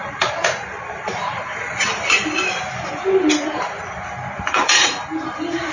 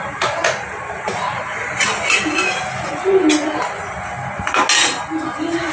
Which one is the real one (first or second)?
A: second